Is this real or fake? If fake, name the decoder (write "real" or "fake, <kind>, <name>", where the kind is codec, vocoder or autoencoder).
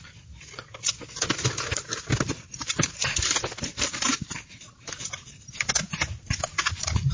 real